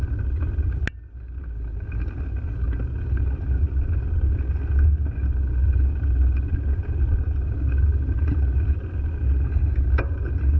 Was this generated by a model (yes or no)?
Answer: no